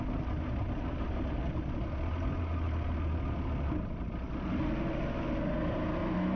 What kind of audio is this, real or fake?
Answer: real